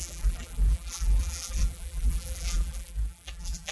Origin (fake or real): fake